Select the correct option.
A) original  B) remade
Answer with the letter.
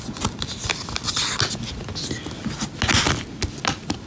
A